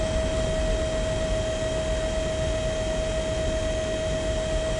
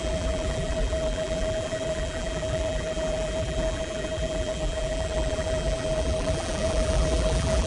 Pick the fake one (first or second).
second